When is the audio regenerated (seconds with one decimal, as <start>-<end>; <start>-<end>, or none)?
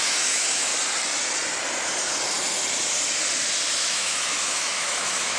0.0-0.7; 3.9-5.4